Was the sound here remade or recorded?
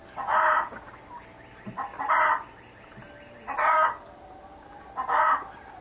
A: recorded